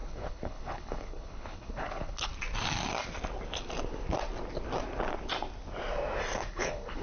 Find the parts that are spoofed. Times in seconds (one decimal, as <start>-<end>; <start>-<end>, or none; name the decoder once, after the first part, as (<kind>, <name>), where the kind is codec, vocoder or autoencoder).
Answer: 0.0-2.3 (codec, HILCodec); 6.5-7.0